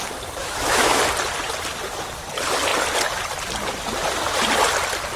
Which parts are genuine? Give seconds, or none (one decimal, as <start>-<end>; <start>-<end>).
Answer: 0.0-0.4; 1.0-5.2